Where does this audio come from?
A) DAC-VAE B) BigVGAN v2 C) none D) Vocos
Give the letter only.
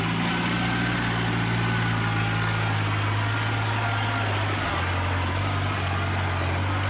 C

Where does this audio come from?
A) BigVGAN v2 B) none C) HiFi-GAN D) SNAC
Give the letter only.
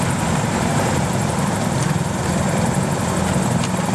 A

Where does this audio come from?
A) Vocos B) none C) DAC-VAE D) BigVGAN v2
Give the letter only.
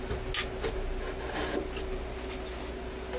B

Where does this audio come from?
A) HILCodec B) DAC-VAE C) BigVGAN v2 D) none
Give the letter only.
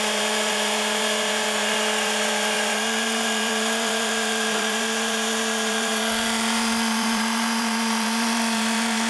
C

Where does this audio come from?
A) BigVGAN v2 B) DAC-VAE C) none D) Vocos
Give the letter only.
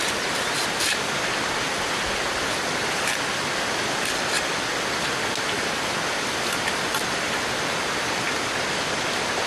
C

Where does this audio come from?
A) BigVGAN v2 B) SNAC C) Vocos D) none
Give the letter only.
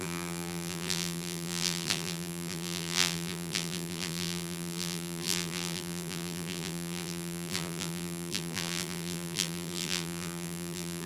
A